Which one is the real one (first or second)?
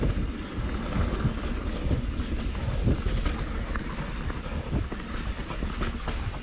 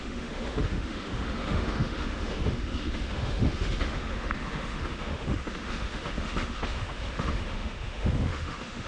first